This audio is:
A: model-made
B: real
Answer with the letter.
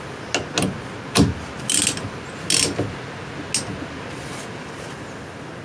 B